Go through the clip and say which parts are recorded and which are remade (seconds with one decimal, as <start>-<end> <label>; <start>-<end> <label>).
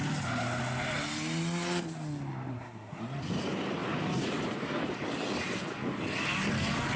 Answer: 0.0-2.5 recorded; 2.5-3.0 remade; 3.0-7.0 recorded